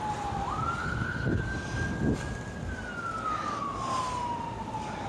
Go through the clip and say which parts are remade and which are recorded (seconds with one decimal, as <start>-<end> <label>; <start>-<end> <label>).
0.0-0.8 recorded; 0.8-1.4 remade; 1.4-5.1 recorded